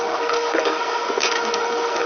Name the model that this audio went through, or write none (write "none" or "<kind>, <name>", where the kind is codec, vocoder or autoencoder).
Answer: codec, SNAC